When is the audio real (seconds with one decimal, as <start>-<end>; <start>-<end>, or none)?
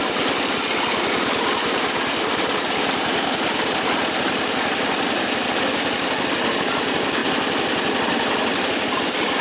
0.0-9.4